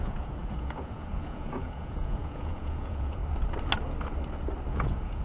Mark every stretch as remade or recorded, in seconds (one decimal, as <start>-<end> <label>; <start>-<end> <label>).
0.0-3.2 remade; 3.2-4.7 recorded; 4.7-5.2 remade